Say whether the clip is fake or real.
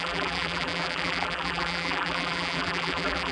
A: fake